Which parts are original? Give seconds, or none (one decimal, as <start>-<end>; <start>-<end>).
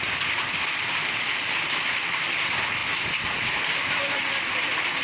0.0-5.0